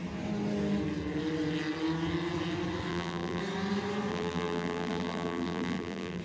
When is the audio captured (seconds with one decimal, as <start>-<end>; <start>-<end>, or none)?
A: 0.0-2.9; 3.4-4.1